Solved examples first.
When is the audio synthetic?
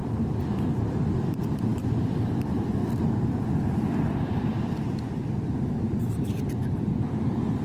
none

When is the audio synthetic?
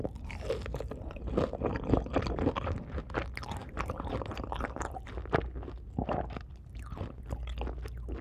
3.6-4.1 (vocoder, BigVGAN v2)